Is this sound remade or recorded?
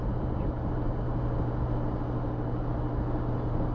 recorded